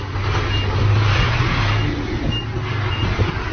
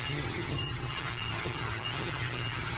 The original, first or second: first